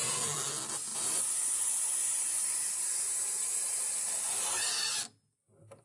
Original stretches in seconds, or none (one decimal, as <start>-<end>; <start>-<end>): 0.0-5.8